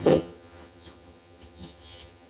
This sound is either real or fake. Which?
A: fake